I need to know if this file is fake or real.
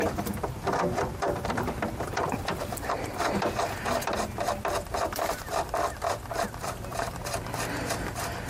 fake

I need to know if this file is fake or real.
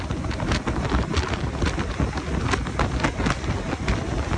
real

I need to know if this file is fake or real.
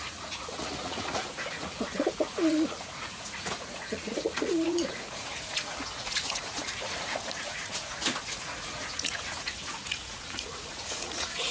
fake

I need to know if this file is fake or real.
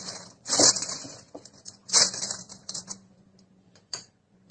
fake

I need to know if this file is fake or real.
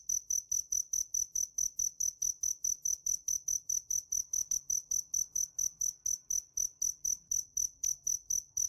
real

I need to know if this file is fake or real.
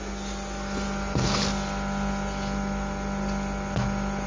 real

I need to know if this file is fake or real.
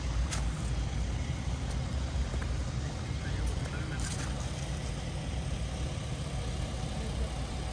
real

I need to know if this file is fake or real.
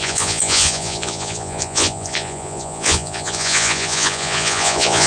fake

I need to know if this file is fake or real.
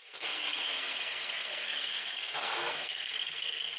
fake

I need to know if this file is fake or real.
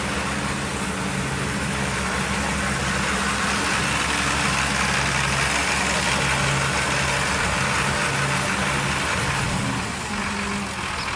real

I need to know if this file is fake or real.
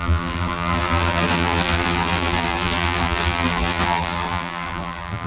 fake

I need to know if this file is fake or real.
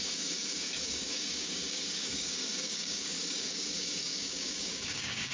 fake